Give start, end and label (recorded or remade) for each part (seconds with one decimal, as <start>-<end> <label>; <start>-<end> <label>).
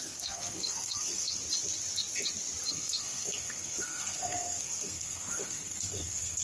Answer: 0.0-1.4 remade; 1.4-2.7 recorded; 2.7-6.4 remade